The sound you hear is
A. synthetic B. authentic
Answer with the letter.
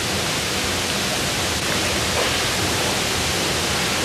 B